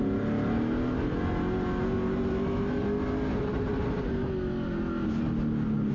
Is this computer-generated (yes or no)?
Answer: no